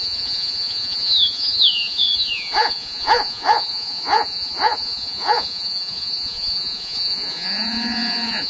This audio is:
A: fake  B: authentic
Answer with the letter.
A